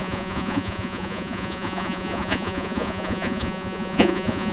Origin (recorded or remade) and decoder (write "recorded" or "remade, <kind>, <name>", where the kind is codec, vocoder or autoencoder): remade, vocoder, Vocos